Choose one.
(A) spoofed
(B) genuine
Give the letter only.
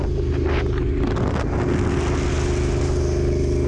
B